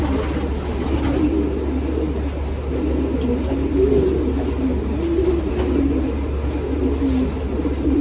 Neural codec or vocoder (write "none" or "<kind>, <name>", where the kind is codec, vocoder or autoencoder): none